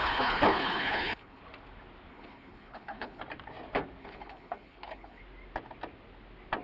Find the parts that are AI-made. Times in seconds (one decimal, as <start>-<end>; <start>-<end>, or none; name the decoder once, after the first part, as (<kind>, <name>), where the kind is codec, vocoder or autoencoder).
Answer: 0.0-1.4 (codec, HILCodec); 2.1-3.2; 4.0-5.2